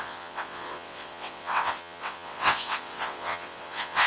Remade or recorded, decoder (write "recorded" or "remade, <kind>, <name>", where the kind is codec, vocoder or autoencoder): remade, vocoder, WaveNeXt